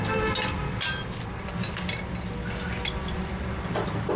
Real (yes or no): yes